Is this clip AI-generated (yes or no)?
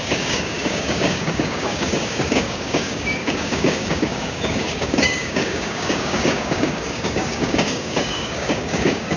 yes